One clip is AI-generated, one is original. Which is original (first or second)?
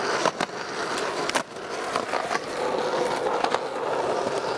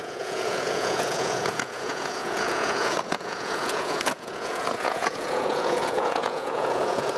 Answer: first